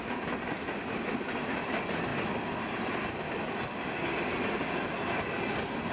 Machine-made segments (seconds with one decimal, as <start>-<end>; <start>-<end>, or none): none